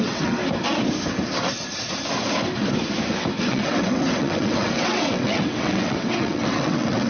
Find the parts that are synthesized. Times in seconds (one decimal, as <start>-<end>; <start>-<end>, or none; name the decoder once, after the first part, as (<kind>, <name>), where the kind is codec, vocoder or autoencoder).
0.0-0.4 (vocoder, WaveNeXt); 3.4-7.1